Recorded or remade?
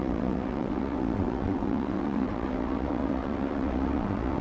remade